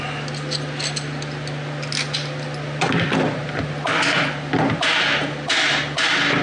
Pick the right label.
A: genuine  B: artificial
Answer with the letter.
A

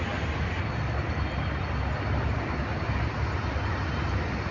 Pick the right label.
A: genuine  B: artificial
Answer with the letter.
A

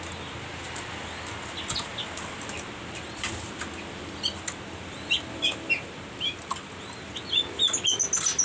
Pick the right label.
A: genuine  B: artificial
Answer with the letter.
A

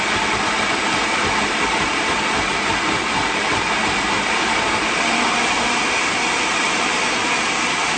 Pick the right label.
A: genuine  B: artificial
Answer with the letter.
B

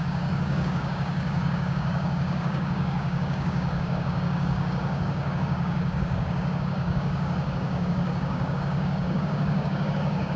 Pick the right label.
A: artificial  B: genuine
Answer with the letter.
A